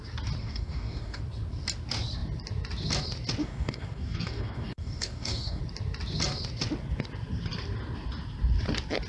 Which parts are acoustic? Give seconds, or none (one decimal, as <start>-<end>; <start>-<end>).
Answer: 0.0-0.4; 1.2-3.4; 5.6-9.1

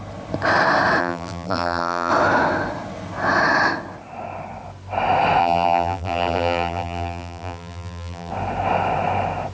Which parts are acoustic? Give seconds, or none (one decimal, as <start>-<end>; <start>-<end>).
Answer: 0.0-1.0; 2.1-5.4; 8.3-9.5

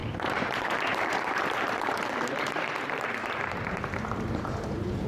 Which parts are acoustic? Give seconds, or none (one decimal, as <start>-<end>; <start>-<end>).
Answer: none

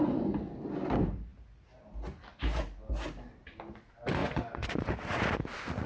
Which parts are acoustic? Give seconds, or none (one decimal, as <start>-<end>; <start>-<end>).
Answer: 0.0-4.2; 4.9-5.9